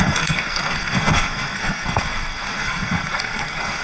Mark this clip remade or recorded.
remade